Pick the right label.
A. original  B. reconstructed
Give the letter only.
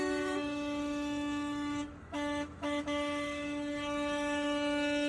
B